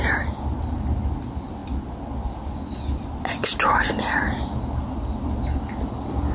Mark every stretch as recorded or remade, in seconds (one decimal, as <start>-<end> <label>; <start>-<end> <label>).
0.0-6.3 recorded